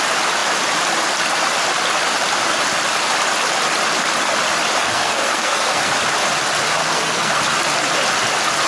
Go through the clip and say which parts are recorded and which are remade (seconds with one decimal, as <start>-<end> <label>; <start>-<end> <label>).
0.0-4.8 recorded; 4.8-5.9 remade; 5.9-6.8 recorded; 6.8-7.4 remade; 7.4-8.7 recorded